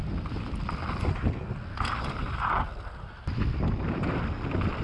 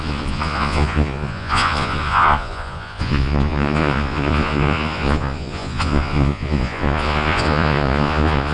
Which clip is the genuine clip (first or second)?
first